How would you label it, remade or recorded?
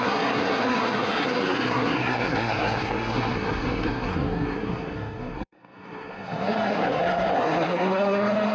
remade